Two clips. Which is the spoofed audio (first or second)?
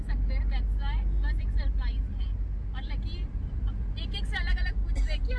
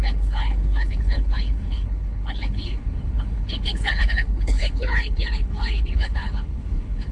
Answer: second